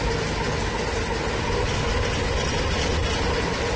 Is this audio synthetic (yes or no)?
no